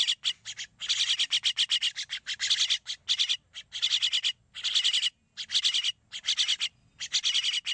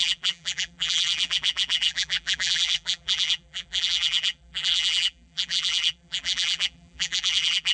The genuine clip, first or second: first